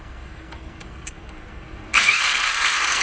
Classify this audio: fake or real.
fake